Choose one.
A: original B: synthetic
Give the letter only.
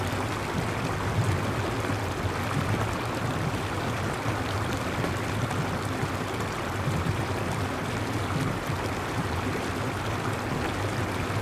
A